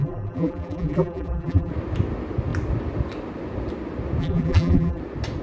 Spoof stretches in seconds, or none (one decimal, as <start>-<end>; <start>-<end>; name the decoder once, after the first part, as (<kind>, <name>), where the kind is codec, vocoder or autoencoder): 0.0-1.7 (vocoder, BigVGAN v2); 4.2-5.0